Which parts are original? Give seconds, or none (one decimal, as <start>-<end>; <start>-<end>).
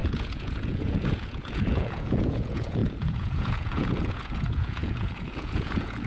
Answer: none